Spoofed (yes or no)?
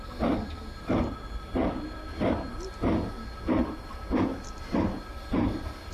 no